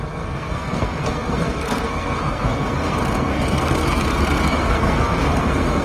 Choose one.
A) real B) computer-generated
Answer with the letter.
B